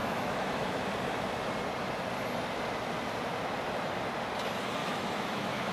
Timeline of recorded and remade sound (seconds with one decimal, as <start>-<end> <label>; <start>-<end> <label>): 0.0-0.9 remade; 0.9-4.8 recorded; 4.8-5.7 remade